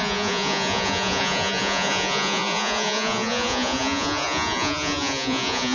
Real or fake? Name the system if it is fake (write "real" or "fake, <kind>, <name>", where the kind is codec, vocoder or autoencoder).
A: fake, vocoder, Vocos